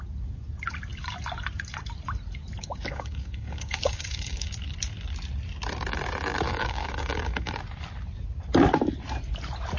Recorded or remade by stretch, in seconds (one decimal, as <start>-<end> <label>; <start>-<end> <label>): 0.0-2.6 recorded; 2.6-4.5 remade; 4.5-6.5 recorded; 6.5-7.6 remade; 7.6-9.8 recorded

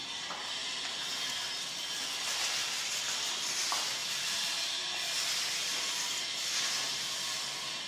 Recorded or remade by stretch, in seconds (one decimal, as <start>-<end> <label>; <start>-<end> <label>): 0.0-4.0 recorded; 4.0-5.1 remade; 5.1-5.6 recorded; 5.6-6.4 remade; 6.4-7.9 recorded

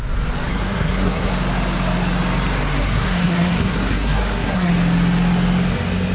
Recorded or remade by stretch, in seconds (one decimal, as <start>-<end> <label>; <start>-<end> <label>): 0.0-0.5 recorded; 0.5-1.3 remade; 1.3-2.7 recorded; 2.7-4.7 remade; 4.7-6.1 recorded